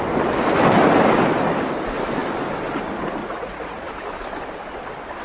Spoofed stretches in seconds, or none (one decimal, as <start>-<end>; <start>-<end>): 3.2-3.8